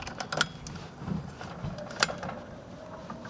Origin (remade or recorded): recorded